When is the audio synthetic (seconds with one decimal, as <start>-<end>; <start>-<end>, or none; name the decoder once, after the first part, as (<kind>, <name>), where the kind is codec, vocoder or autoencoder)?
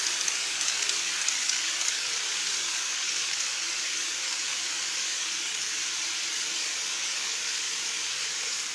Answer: 0.0-5.8 (codec, DAC); 6.3-8.7